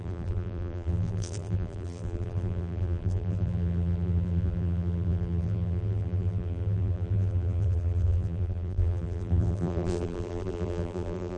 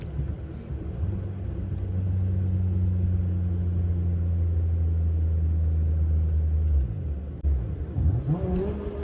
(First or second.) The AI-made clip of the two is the first